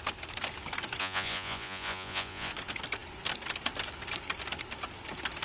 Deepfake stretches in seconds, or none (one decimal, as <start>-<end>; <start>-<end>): 1.0-2.5